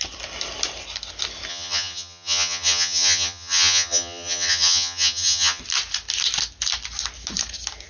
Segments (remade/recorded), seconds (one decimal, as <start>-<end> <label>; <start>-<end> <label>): 0.0-1.5 recorded; 1.5-5.6 remade; 5.6-7.9 recorded